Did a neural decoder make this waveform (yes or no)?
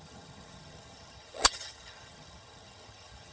yes